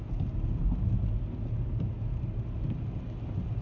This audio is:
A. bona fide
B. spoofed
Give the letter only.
A